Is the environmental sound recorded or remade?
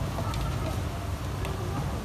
recorded